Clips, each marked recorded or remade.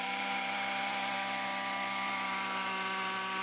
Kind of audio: remade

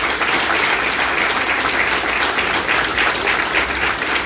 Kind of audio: recorded